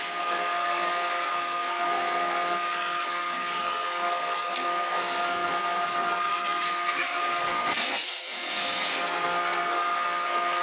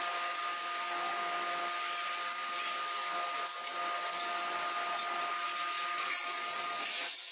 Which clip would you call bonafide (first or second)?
second